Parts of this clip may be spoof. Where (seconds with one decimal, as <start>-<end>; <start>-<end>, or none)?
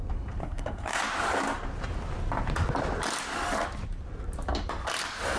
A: 0.4-1.0